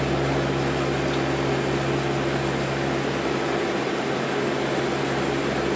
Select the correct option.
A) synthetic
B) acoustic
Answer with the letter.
B